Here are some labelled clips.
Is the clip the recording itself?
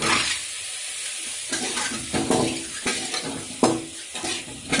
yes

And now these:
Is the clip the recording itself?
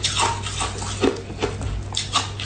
yes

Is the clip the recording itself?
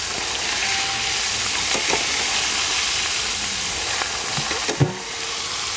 yes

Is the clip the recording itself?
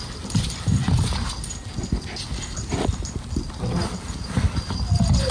yes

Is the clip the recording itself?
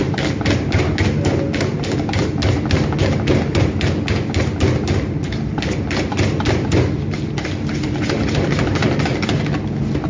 yes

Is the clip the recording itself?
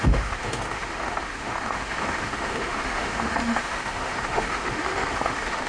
no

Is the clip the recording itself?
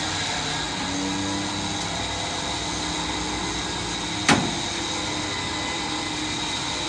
yes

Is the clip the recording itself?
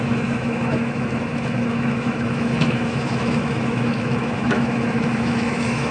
no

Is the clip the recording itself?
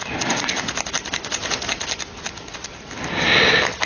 yes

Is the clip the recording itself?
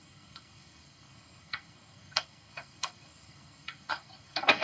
no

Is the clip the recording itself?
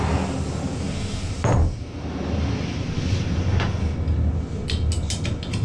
yes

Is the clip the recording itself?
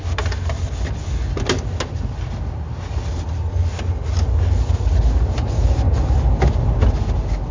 yes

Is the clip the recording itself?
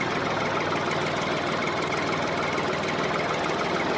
yes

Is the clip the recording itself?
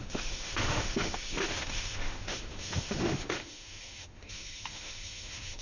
no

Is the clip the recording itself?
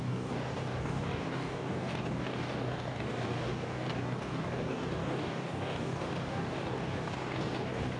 no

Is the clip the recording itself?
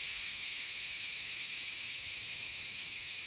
no